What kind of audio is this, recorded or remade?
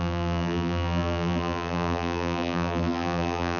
remade